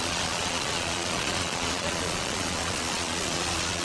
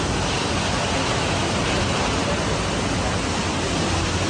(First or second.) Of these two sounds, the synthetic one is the first